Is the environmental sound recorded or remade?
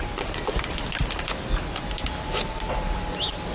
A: recorded